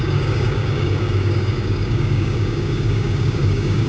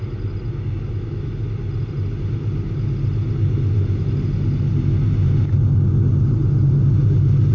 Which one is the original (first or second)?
second